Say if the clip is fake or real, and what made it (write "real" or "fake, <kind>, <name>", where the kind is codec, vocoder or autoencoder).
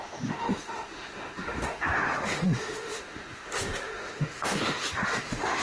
fake, autoencoder, DAC-VAE